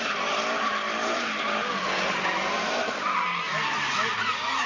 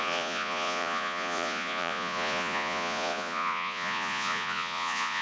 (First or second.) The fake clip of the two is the second